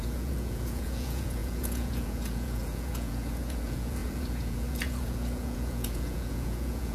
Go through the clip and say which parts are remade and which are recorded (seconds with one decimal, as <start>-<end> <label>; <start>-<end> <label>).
0.0-6.9 remade

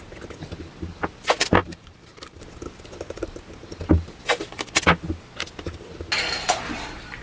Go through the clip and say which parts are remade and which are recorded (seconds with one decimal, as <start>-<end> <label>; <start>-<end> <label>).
0.0-1.6 recorded; 1.6-2.4 remade; 2.4-7.2 recorded

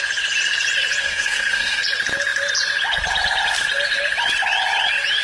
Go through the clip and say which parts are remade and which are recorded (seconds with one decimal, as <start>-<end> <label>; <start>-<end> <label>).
0.0-1.0 recorded; 1.0-1.8 remade; 1.8-5.2 recorded

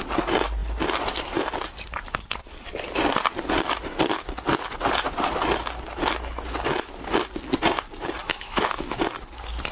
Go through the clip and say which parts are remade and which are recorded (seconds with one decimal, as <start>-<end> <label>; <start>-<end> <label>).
0.0-8.2 recorded; 8.2-9.0 remade; 9.0-9.7 recorded

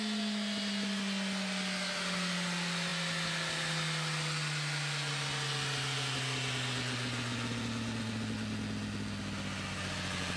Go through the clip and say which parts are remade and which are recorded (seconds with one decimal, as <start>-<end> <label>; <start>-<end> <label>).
0.0-10.4 recorded

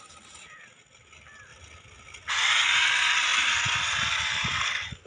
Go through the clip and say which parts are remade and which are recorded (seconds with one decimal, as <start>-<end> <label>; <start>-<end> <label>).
0.0-5.1 recorded

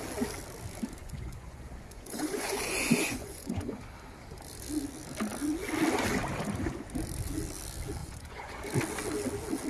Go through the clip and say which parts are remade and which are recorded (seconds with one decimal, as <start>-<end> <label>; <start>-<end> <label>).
0.0-1.0 recorded; 1.0-3.8 remade; 3.8-8.0 recorded; 8.0-8.5 remade; 8.5-9.7 recorded